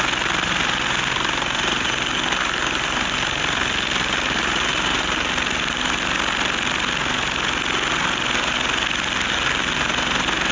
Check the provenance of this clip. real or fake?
real